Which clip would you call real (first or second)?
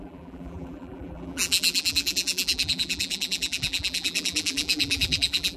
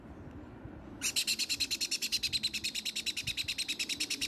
second